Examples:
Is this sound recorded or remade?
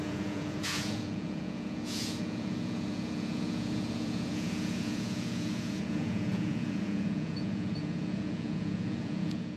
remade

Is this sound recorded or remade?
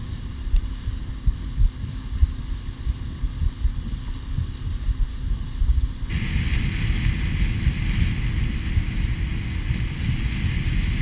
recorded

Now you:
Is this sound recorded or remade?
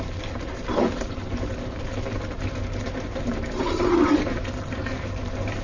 remade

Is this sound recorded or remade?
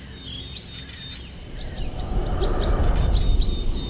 recorded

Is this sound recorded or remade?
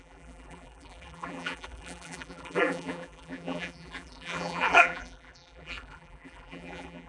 remade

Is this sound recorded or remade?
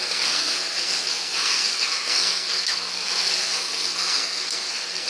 remade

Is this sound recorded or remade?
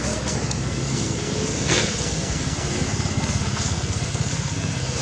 remade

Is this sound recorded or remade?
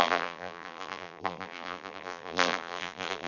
remade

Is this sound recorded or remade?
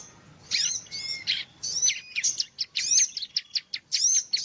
recorded